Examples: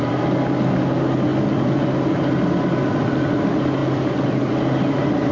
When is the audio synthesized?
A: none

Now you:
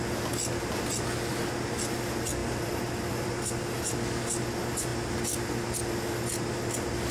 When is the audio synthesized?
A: 2.4-3.8 (vocoder, BigVGAN v2)

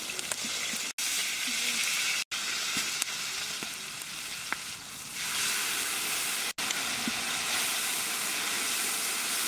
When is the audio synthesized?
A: none

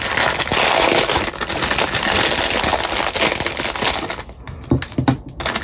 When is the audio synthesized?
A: none

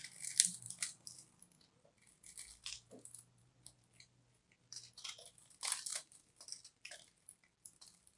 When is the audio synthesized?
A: none

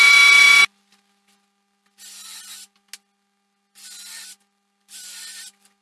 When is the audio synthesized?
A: none

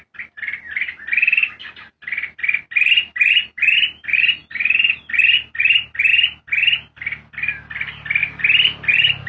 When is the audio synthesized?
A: none